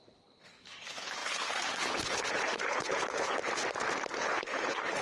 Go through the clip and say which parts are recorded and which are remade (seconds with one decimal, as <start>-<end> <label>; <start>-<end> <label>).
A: 0.0-3.4 remade; 3.4-4.2 recorded; 4.2-5.0 remade